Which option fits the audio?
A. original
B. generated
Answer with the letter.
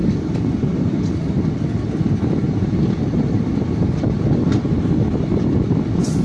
A